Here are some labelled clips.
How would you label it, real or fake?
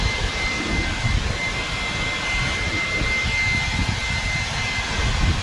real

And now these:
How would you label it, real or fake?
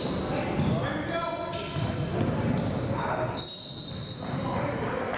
real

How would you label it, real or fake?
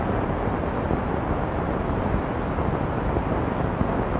real